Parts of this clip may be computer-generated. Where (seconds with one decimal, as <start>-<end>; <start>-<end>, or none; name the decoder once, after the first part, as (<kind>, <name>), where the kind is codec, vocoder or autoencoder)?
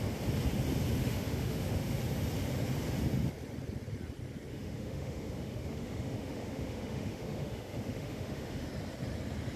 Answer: 1.0-2.0 (autoencoder, DAC-VAE); 4.5-8.7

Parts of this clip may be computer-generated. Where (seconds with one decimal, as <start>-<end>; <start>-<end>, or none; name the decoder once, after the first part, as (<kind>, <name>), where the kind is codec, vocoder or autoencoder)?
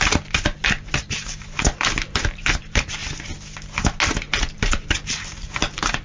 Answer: 1.0-3.0 (vocoder, BigVGAN v2); 4.3-6.0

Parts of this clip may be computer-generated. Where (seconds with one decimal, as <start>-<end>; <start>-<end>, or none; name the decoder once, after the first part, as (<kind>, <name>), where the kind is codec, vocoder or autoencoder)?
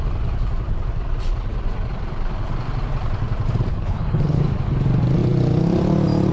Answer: 3.7-4.4 (codec, HILCodec)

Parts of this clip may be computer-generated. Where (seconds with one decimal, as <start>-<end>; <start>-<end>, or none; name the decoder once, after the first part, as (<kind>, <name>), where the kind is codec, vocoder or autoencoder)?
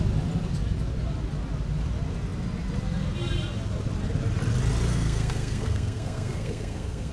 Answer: 4.9-7.1 (codec, SNAC)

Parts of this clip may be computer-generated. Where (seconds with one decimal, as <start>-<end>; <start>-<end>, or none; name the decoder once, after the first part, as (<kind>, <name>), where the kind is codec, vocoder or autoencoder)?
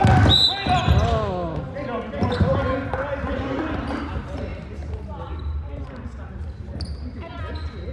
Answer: none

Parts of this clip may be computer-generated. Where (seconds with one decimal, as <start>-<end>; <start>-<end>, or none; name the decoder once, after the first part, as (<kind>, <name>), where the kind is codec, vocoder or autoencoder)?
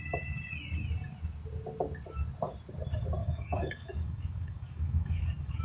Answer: 3.2-5.6 (codec, DAC)